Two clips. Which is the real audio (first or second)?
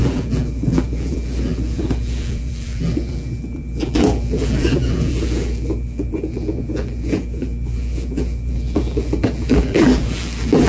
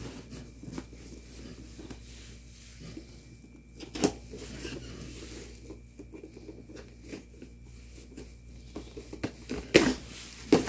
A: second